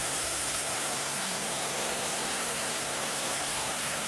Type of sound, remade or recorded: remade